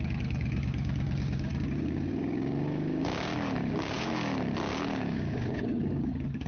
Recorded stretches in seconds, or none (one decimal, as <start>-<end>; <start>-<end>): none